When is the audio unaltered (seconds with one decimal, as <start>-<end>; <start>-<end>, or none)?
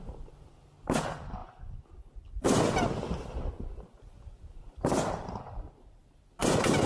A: 0.0-6.9